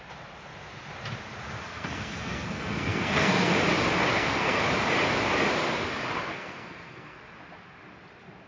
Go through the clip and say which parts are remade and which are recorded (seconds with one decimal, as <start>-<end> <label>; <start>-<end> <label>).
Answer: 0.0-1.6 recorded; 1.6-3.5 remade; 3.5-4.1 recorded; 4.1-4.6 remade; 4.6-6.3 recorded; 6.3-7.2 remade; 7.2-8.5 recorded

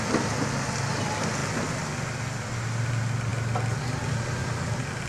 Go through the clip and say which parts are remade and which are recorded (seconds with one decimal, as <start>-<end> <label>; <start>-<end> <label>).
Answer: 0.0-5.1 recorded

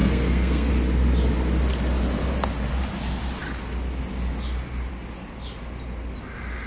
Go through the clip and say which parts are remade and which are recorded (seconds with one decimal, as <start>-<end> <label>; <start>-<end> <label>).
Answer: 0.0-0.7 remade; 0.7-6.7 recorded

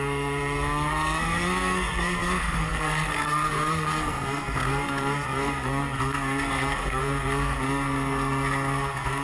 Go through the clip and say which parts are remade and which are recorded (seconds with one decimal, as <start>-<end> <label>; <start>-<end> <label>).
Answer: 0.0-9.2 remade

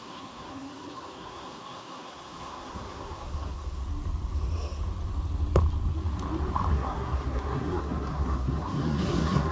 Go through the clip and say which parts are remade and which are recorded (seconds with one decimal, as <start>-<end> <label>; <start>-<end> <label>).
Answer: 0.0-3.8 remade; 3.8-6.7 recorded; 6.7-9.5 remade

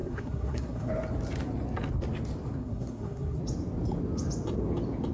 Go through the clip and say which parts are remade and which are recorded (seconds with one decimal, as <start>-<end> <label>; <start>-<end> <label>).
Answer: 0.0-0.9 remade; 0.9-2.6 recorded; 2.6-3.4 remade; 3.4-5.1 recorded

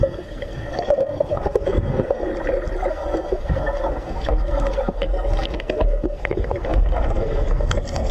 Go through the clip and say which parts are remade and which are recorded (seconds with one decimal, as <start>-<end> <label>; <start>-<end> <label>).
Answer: 0.0-2.3 remade; 2.3-2.9 recorded; 2.9-8.1 remade

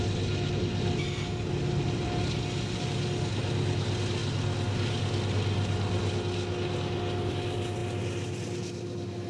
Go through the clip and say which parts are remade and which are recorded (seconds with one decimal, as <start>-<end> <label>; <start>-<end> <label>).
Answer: 0.0-9.3 recorded